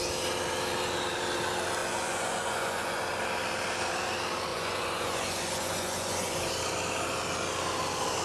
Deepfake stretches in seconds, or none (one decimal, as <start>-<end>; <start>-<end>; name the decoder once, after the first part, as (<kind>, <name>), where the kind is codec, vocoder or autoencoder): 1.8-3.0 (vocoder, Vocos); 4.5-6.4